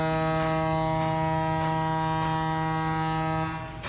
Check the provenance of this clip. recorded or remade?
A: recorded